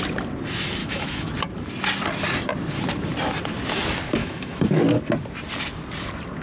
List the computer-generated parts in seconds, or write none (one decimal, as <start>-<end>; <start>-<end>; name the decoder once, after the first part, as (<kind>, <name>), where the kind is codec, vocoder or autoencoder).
0.8-1.3 (autoencoder, DAC-VAE); 4.2-4.8